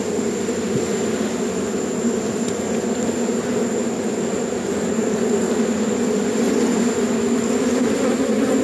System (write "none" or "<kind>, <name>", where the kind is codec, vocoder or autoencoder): none